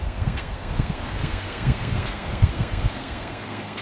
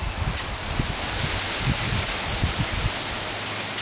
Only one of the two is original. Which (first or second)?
second